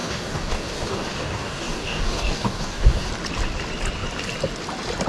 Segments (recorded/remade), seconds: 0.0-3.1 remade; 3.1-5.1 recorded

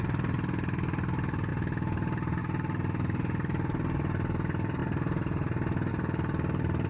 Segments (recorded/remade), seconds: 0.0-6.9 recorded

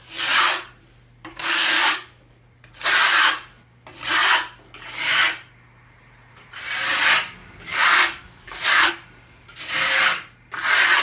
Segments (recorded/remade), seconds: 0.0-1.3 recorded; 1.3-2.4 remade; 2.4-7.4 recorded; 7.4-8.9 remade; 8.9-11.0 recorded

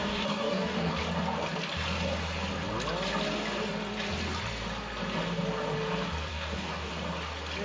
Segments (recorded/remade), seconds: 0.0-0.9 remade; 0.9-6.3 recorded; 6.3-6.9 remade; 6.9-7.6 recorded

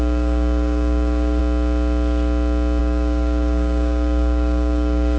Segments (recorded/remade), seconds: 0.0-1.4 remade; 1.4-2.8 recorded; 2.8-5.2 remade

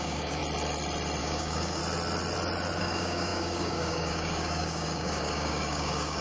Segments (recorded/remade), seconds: 0.0-0.4 remade; 0.4-1.2 recorded; 1.2-1.8 remade; 1.8-2.8 recorded; 2.8-6.2 remade